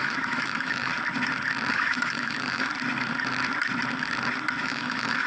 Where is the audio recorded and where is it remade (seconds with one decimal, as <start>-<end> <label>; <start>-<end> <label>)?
0.0-0.9 remade; 0.9-1.7 recorded; 1.7-2.7 remade; 2.7-4.6 recorded; 4.6-5.3 remade